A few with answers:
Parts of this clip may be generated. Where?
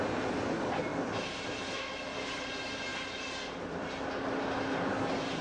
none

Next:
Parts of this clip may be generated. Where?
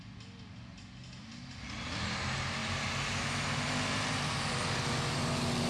2.6-5.2 (vocoder, BigVGAN v2)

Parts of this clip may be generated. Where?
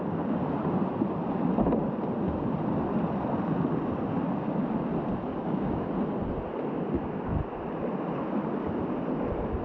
5.3-5.9 (codec, DAC)